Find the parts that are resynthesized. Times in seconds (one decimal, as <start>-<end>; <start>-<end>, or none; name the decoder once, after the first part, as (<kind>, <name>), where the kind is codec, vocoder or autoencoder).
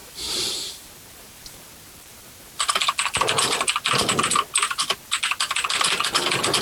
0.0-2.7 (vocoder, BigVGAN v2)